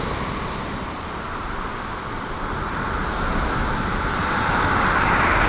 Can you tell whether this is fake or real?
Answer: real